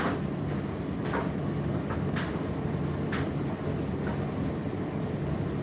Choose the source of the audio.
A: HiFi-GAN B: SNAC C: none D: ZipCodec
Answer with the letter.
C